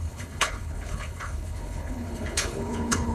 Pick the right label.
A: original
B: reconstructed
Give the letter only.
B